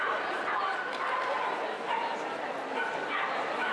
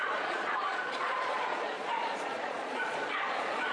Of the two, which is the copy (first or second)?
second